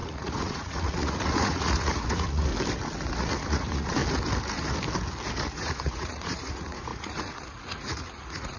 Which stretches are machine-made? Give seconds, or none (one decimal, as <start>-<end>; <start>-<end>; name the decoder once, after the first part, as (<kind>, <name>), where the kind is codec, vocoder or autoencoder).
0.0-2.5 (vocoder, Vocos); 3.2-4.0; 5.4-8.6